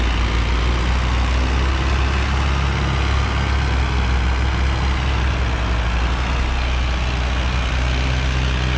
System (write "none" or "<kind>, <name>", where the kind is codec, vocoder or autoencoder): none